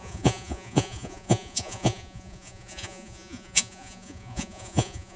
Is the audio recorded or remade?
remade